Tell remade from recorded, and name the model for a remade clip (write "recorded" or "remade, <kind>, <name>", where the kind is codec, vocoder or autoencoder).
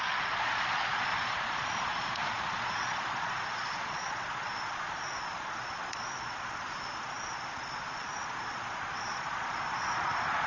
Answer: remade, vocoder, Vocos